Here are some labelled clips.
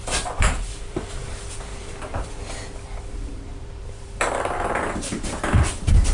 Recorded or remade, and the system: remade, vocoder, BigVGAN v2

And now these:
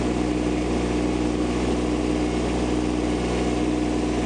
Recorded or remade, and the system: recorded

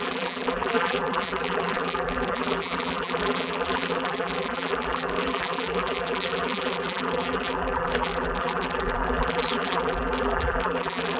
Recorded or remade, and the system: remade, vocoder, BigVGAN v2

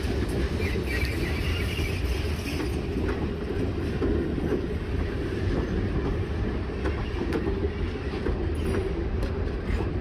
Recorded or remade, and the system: recorded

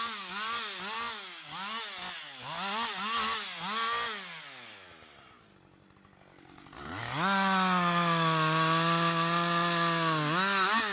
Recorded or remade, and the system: recorded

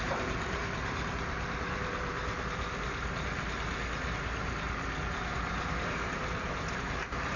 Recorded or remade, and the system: remade, vocoder, BigVGAN v2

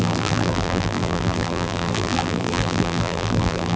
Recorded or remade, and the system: remade, vocoder, BigVGAN v2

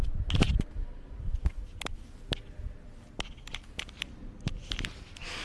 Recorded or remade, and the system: recorded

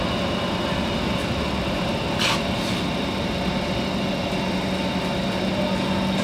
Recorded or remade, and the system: recorded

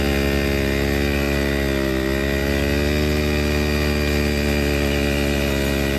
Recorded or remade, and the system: recorded